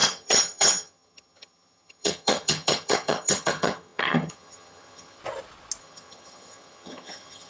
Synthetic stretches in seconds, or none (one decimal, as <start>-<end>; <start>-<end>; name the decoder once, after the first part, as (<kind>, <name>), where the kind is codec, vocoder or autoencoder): 0.0-5.2 (vocoder, HiFi-GAN); 5.8-7.5